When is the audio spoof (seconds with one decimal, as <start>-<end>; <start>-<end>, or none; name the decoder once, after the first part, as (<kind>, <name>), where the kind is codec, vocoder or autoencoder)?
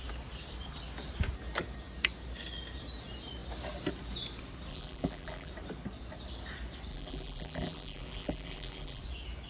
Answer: 4.7-5.5 (vocoder, BigVGAN v2); 6.9-9.0